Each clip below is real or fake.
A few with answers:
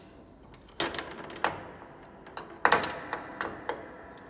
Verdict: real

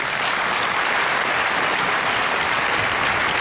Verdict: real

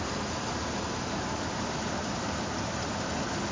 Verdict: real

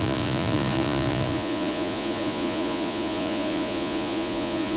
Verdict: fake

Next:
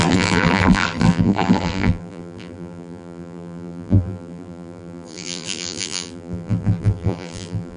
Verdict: fake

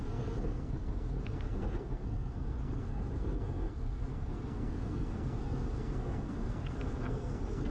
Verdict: fake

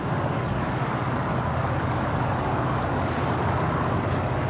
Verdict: fake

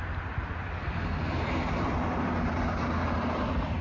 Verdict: real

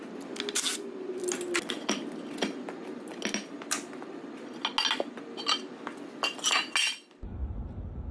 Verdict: real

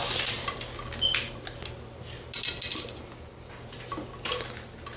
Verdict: real